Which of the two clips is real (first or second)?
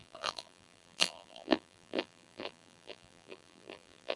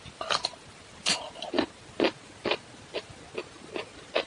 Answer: second